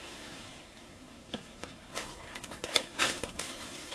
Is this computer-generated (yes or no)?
yes